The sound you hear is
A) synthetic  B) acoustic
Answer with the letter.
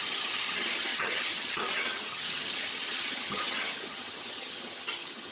A